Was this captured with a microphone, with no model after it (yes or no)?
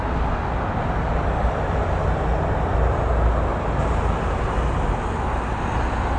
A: yes